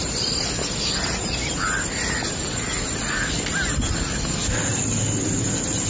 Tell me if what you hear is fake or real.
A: real